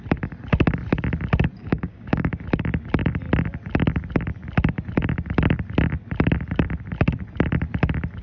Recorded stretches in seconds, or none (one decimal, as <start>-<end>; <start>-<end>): 0.0-1.6; 2.3-8.2